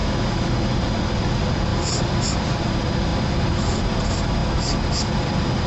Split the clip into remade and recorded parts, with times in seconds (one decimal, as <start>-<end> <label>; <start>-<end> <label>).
0.0-5.7 recorded